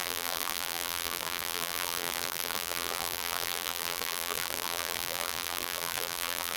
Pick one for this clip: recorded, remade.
remade